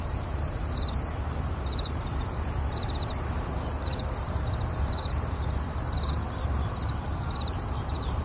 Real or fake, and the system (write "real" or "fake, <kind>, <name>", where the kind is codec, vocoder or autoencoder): fake, vocoder, BigVGAN v2